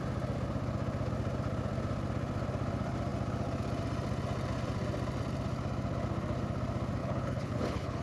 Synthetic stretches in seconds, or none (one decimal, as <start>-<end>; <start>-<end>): 7.0-8.0